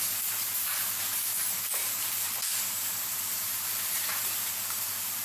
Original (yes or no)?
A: no